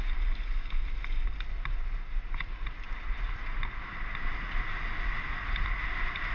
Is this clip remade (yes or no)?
no